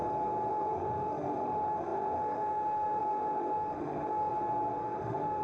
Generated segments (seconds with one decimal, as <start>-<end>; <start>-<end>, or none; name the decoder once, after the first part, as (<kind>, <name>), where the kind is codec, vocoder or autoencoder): 0.5-4.3 (autoencoder, DAC-VAE); 5.0-5.4